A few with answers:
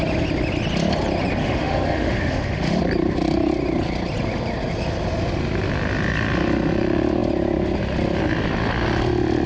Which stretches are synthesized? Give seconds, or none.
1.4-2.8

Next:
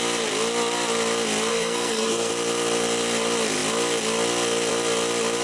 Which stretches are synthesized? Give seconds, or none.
1.5-2.3

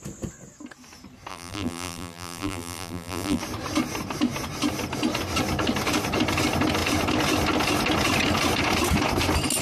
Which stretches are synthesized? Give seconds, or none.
1.3-3.4